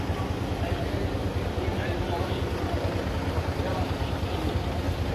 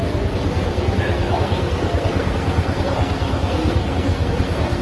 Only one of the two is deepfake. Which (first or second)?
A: second